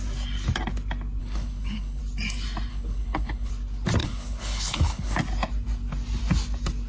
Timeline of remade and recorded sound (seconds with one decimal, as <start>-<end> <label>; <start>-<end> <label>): 0.0-1.2 recorded; 1.2-2.0 remade; 2.0-2.7 recorded; 2.7-3.5 remade; 3.5-4.0 recorded; 4.0-5.2 remade; 5.2-6.9 recorded